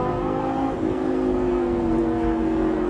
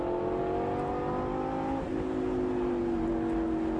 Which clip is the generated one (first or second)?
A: first